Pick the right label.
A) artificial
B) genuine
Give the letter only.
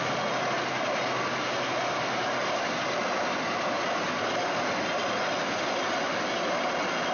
B